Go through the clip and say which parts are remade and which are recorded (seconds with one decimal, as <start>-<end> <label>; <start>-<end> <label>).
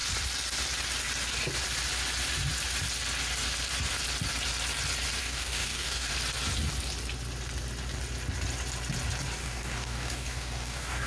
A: 0.0-5.2 recorded; 5.2-6.1 remade; 6.1-9.4 recorded; 9.4-11.1 remade